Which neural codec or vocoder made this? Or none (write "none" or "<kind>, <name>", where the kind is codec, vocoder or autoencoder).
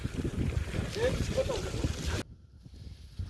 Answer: none